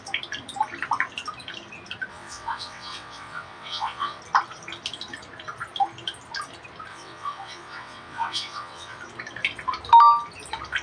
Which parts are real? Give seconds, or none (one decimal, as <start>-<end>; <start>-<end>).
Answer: 0.0-2.1; 4.2-6.9; 9.0-10.8